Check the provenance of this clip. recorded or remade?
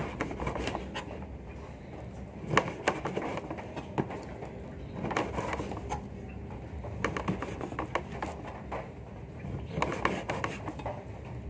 recorded